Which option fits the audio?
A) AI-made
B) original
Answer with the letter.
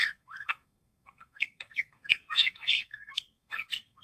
A